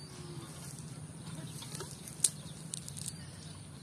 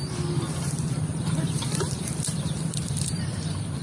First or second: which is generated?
second